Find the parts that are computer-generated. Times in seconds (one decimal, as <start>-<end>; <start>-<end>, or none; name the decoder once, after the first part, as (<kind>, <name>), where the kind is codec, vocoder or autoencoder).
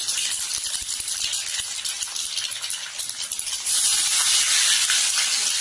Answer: 0.0-1.3 (vocoder, BigVGAN v2); 2.0-5.6